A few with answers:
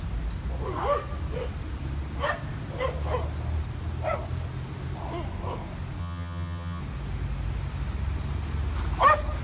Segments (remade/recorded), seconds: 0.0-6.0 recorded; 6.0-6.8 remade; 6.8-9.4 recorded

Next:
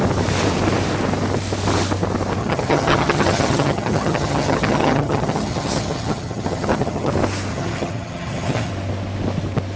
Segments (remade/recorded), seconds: 0.0-2.4 recorded; 2.4-7.1 remade; 7.1-7.5 recorded; 7.5-8.7 remade; 8.7-9.8 recorded